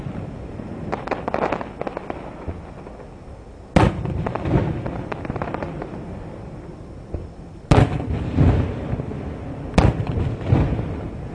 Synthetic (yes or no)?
no